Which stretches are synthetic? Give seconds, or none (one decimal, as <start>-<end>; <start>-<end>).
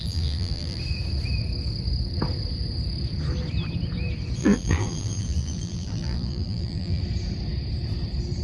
0.0-0.8; 4.4-7.0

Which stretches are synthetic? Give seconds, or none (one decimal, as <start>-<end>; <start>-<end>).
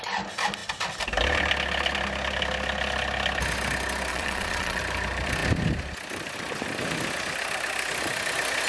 4.1-4.8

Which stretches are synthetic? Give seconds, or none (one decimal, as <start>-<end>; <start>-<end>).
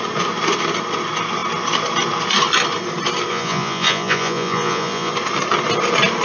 3.3-5.1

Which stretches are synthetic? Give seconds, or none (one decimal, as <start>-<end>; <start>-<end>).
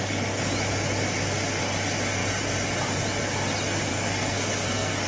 3.9-5.1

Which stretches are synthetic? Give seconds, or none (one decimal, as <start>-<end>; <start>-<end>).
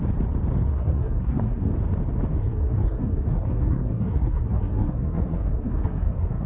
0.7-1.7; 2.4-6.5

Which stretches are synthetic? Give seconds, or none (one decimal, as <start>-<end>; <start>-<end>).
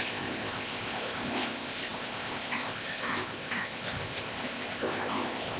0.0-5.6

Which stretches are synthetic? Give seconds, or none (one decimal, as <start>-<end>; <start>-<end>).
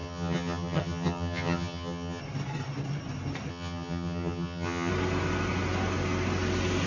0.0-2.2; 3.5-4.9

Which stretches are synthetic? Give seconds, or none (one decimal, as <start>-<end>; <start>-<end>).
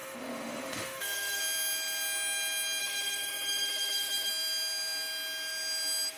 0.0-1.4; 2.8-4.3